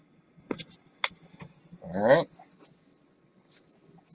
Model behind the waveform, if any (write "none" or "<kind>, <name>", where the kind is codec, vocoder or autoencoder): none